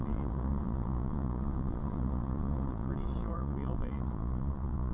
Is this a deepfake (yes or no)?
yes